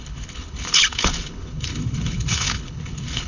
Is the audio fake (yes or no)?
yes